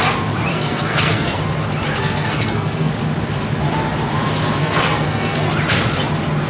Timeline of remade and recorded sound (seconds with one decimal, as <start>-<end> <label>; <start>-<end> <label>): 0.0-0.5 recorded; 0.5-1.4 remade; 1.4-1.9 recorded; 1.9-2.9 remade; 2.9-4.6 recorded; 4.6-5.5 remade; 5.5-6.5 recorded